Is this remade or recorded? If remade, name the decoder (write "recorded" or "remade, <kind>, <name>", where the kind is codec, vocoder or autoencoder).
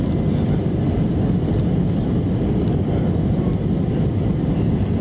recorded